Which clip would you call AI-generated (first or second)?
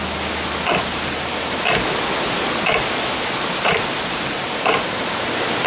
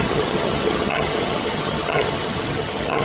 second